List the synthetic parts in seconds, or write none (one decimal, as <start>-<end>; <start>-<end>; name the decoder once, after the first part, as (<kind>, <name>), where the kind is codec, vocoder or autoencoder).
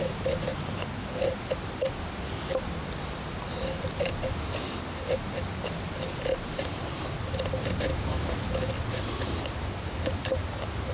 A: 0.5-1.1 (autoencoder, DAC-VAE); 7.9-8.7